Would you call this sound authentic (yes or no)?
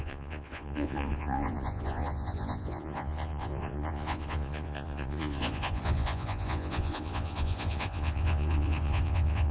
no